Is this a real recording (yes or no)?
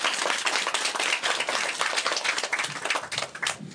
yes